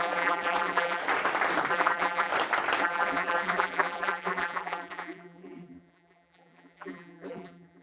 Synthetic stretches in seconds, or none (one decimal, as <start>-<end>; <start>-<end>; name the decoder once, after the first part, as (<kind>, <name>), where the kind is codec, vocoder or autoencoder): 0.0-1.0 (vocoder, BigVGAN v2); 1.7-2.3; 2.8-7.8